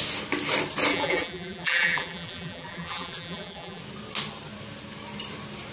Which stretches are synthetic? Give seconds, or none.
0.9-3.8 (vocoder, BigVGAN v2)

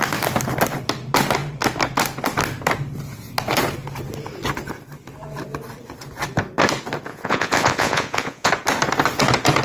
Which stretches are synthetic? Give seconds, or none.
7.1-8.5 (vocoder, Vocos)

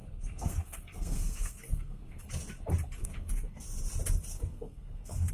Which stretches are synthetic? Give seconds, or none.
0.0-2.2 (codec, SNAC); 3.0-3.6; 4.3-5.3

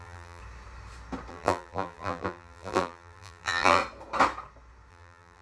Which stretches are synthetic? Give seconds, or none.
0.0-0.4 (vocoder, BigVGAN v2); 1.3-3.8; 4.9-5.4

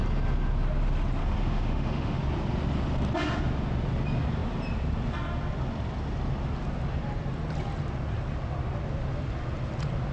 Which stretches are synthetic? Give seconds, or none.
1.2-2.2 (autoencoder, DAC-VAE)

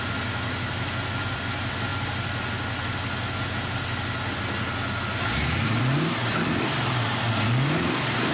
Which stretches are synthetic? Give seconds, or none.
none

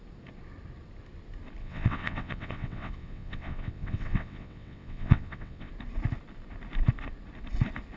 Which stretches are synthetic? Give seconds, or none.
1.6-5.7 (vocoder, WaveNeXt)